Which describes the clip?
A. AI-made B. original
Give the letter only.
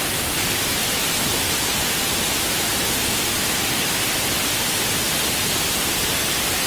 B